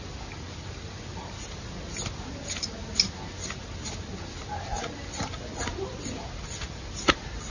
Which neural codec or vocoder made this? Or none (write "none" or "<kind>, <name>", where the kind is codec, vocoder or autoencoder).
none